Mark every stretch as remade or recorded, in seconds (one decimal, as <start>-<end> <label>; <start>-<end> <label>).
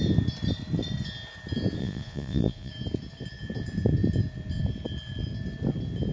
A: 0.0-1.8 recorded; 1.8-2.7 remade; 2.7-6.1 recorded